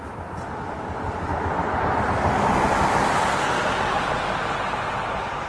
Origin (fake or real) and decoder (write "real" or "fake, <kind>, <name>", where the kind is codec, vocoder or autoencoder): real